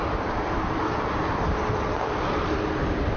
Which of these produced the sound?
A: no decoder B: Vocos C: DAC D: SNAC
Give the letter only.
A